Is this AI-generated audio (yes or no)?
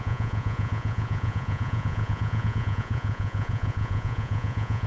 yes